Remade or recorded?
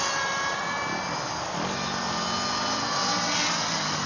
recorded